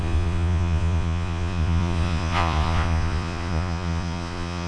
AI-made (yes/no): yes